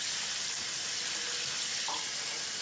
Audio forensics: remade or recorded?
recorded